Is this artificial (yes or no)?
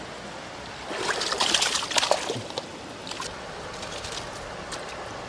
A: no